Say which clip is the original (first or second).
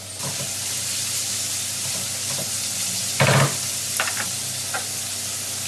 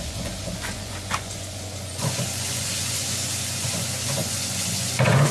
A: first